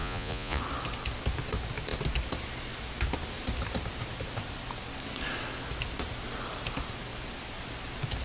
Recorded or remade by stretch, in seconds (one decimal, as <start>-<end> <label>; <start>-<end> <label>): 0.0-0.6 remade; 0.6-8.2 recorded